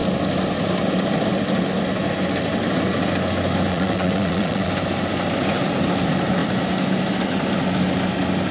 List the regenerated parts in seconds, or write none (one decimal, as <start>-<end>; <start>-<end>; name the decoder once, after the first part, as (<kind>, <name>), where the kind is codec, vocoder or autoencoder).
3.7-4.7 (vocoder, WaveNeXt)